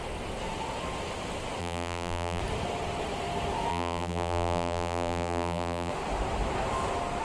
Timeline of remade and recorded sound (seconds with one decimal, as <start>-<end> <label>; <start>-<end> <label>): 0.0-1.6 recorded; 1.6-2.4 remade; 2.4-3.7 recorded; 3.7-5.9 remade; 5.9-7.2 recorded